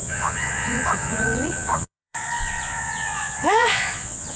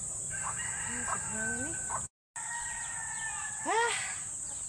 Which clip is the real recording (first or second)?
second